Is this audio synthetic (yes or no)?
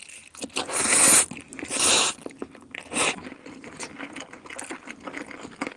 no